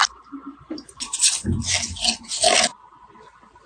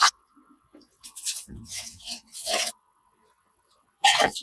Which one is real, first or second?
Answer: first